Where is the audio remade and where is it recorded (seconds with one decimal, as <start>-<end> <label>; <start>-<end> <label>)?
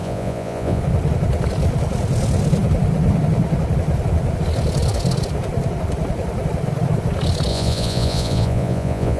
0.0-0.8 remade; 0.8-7.5 recorded; 7.5-9.2 remade